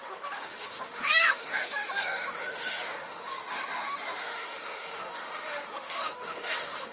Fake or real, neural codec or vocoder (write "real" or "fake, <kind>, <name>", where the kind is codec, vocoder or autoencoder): fake, autoencoder, DAC-VAE